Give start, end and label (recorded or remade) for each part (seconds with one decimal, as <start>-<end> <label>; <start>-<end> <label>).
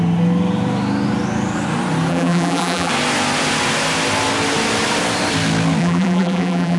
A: 0.0-2.1 recorded; 2.1-2.9 remade; 2.9-5.8 recorded; 5.8-6.8 remade